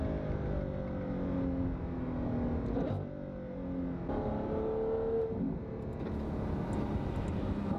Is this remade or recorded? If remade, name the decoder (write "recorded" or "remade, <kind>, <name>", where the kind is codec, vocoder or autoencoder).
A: recorded